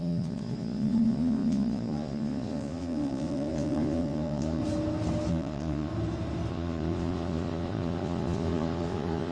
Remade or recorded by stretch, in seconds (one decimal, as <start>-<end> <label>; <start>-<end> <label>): 0.0-4.6 remade; 4.6-5.3 recorded; 5.3-5.9 remade; 5.9-6.5 recorded; 6.5-9.3 remade